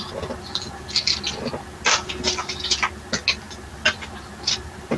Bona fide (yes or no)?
yes